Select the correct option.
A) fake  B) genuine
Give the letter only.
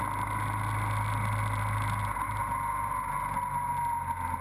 B